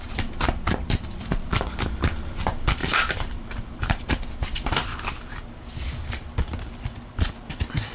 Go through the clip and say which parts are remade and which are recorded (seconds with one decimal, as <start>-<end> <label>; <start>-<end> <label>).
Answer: 0.0-7.9 remade